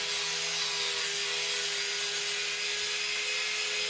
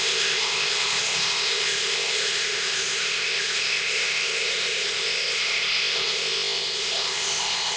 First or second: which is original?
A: first